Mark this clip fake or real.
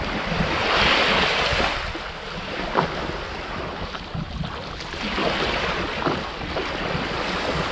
real